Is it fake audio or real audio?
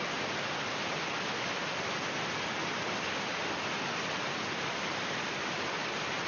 real